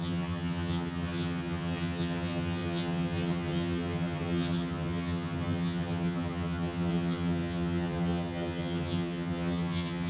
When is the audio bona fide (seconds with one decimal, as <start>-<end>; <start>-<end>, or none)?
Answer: none